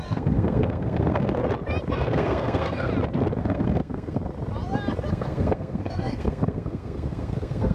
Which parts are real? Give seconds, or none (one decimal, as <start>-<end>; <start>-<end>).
1.4-1.9; 2.9-3.4; 4.2-5.1